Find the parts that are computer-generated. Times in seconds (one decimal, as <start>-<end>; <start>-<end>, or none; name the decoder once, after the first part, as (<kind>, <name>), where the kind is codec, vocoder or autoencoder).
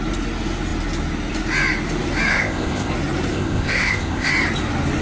2.3-2.9 (codec, ZipCodec); 3.3-4.3